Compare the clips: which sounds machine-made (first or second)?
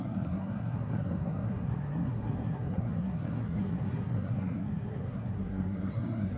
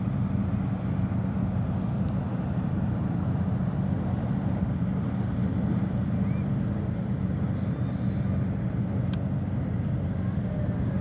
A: first